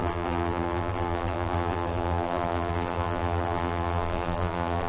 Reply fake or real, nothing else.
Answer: fake